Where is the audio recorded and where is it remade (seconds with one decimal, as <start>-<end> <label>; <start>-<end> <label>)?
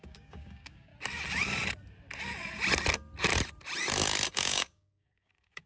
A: 0.0-0.9 remade; 0.9-4.3 recorded; 4.3-5.7 remade